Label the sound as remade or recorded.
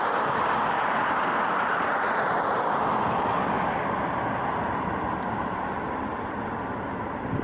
recorded